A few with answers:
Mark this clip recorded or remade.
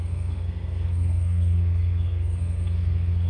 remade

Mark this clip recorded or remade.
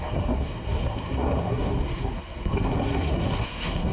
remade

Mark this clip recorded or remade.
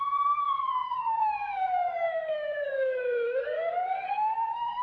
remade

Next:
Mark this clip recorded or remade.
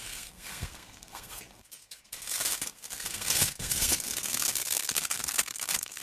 remade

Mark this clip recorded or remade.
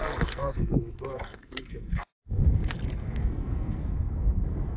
remade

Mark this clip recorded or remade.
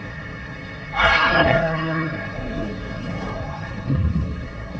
remade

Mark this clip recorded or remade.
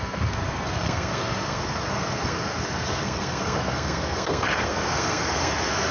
remade